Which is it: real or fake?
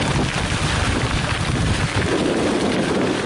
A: fake